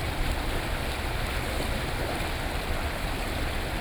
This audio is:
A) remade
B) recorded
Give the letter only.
B